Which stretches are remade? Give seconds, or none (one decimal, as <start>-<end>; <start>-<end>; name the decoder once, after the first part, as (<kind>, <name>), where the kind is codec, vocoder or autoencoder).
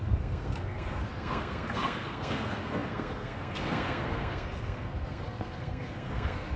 0.0-6.6 (codec, SNAC)